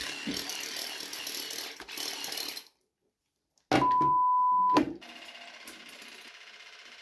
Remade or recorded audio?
recorded